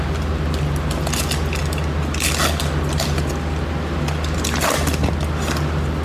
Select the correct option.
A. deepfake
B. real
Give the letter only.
B